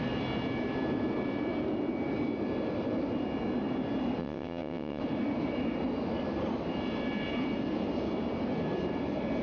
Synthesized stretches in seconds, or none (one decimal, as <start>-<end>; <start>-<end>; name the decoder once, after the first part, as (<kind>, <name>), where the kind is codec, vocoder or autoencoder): 4.2-5.0 (vocoder, WaveNeXt)